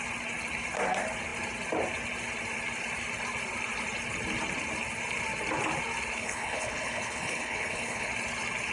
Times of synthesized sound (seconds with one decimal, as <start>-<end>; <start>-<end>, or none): 6.2-8.1